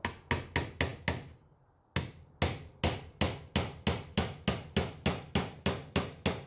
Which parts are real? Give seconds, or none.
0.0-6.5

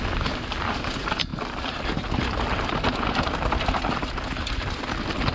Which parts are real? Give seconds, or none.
0.0-5.3

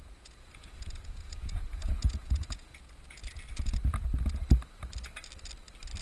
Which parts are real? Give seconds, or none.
3.2-6.0

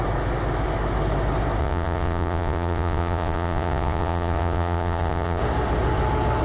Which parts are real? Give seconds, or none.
0.0-1.6; 5.4-6.4

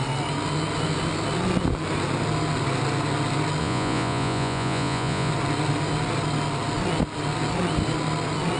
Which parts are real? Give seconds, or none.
0.0-3.6; 5.3-8.6

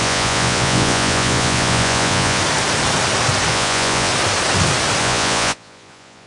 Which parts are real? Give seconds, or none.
2.4-3.5; 4.1-5.0